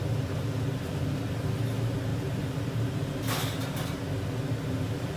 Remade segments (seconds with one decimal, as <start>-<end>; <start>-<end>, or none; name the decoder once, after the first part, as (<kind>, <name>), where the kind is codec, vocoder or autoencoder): none